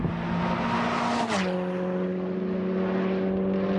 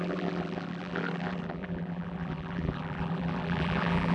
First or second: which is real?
first